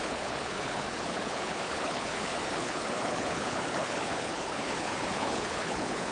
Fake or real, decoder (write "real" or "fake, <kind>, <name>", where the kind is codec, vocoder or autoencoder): fake, codec, HILCodec